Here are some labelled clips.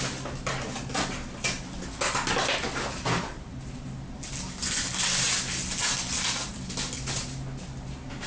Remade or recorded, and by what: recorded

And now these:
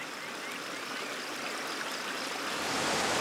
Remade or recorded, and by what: recorded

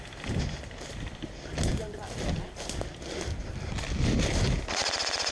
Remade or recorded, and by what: recorded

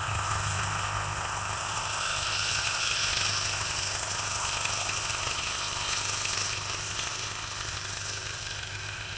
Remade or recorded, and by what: remade, codec, ZipCodec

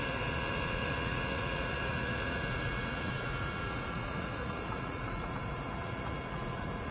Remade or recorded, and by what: remade, vocoder, Vocos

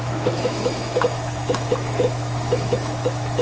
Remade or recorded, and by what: remade, autoencoder, DAC-VAE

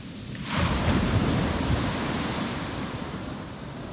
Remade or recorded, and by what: remade, vocoder, BigVGAN v2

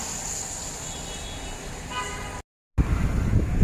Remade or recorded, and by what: recorded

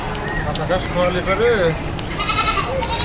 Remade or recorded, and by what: recorded